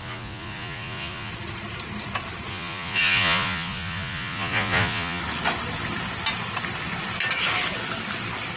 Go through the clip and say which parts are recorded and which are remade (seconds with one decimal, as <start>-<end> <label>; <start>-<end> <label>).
0.0-1.3 remade; 1.3-2.5 recorded; 2.5-5.2 remade; 5.2-8.6 recorded